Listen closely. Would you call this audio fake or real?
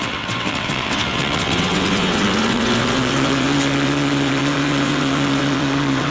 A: fake